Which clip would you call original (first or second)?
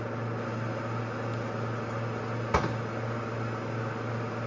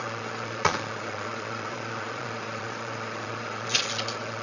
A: first